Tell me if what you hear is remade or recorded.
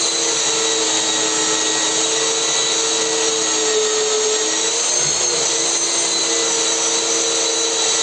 recorded